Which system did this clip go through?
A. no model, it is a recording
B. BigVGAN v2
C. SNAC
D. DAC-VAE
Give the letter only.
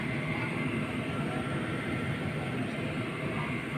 A